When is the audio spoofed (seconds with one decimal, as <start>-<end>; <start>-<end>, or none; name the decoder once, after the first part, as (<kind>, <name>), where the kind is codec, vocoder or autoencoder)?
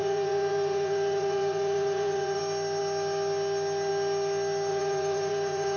0.0-2.4 (vocoder, Vocos); 4.7-5.8